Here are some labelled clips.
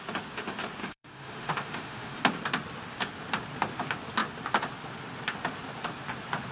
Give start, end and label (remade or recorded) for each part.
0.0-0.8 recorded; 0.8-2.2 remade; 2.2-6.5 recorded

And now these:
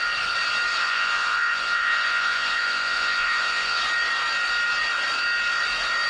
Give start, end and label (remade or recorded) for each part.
0.0-0.8 recorded; 0.8-3.8 remade; 3.8-6.1 recorded

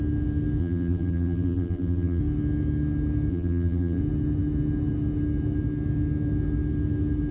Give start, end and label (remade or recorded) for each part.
0.0-0.6 recorded; 0.6-2.2 remade; 2.2-3.3 recorded; 3.3-4.0 remade; 4.0-7.3 recorded

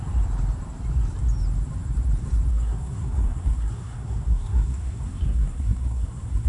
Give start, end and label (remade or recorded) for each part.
0.0-2.5 recorded; 2.5-6.5 remade

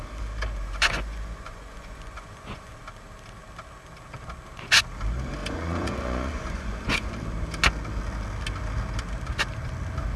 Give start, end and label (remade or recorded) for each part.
0.0-0.6 recorded; 0.6-2.8 remade; 2.8-5.4 recorded; 5.4-7.1 remade; 7.1-10.2 recorded

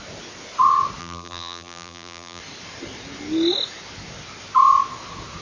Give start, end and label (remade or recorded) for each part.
0.0-1.0 recorded; 1.0-2.4 remade; 2.4-5.4 recorded